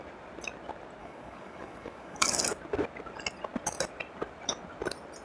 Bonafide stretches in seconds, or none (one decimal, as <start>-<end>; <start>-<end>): 0.0-1.0; 2.4-5.2